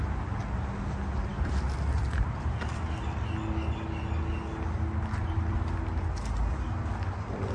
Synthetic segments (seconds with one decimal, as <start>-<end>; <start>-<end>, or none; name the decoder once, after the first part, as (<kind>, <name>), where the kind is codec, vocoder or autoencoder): none